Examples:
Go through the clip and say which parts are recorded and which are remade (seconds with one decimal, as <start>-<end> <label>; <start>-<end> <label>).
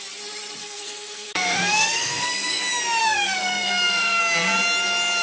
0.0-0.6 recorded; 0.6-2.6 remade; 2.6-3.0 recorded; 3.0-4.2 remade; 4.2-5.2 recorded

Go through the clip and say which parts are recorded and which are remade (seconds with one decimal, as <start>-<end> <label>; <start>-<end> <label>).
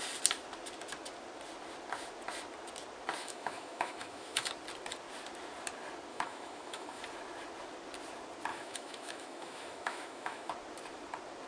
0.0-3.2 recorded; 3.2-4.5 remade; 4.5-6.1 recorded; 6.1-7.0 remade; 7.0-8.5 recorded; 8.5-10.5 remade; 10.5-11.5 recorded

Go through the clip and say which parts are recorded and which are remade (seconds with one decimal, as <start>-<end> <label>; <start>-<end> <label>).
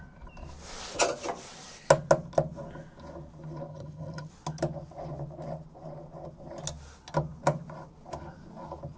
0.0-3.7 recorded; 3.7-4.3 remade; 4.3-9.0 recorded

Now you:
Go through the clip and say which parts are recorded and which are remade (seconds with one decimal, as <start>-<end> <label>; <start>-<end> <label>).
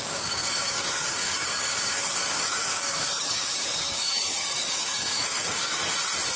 0.0-5.8 remade; 5.8-6.4 recorded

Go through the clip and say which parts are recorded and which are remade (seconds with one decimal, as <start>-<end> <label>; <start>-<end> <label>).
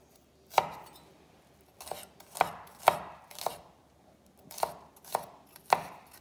0.0-6.2 recorded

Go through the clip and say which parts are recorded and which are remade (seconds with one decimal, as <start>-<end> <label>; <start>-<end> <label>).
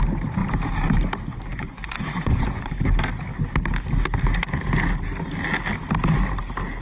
0.0-1.5 recorded; 1.5-2.8 remade; 2.8-6.8 recorded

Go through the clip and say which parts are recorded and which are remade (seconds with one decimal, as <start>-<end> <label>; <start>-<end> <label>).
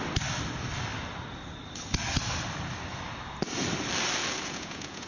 0.0-4.2 recorded; 4.2-5.1 remade